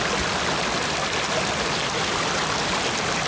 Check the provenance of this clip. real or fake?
real